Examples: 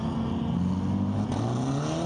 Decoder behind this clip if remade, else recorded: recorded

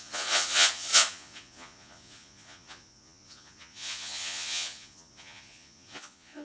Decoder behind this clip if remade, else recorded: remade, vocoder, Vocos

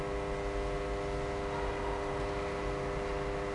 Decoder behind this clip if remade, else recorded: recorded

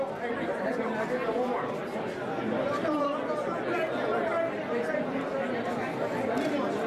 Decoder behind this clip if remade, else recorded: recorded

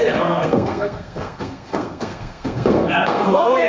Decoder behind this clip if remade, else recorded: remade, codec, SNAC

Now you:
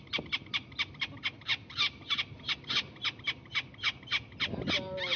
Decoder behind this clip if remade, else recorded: recorded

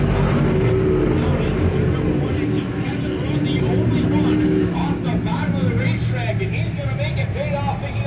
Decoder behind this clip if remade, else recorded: recorded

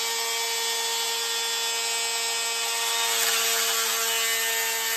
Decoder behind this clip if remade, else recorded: recorded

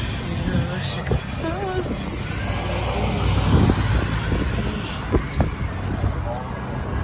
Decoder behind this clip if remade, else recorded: recorded